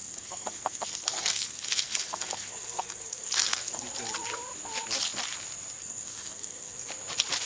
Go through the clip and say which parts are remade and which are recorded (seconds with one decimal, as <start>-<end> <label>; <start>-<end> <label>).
0.0-3.8 remade; 3.8-5.8 recorded; 5.8-6.9 remade; 6.9-7.5 recorded